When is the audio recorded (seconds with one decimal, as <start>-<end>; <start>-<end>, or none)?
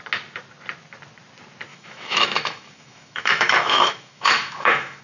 0.0-1.7